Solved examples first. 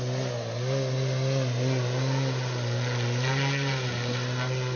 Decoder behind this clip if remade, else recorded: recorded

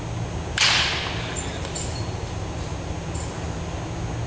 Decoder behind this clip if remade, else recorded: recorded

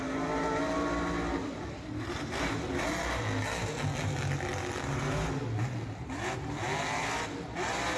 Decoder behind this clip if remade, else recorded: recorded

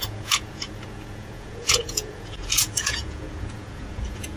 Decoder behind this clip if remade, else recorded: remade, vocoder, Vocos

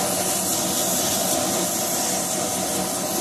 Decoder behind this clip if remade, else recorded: recorded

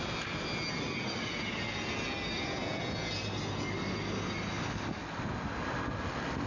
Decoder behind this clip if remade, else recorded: recorded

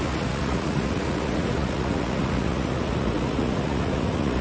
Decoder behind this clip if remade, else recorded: remade, vocoder, Vocos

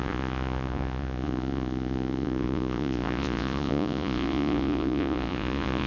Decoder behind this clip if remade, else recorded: remade, vocoder, Vocos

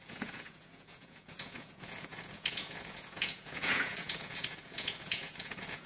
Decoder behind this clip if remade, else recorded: remade, vocoder, Vocos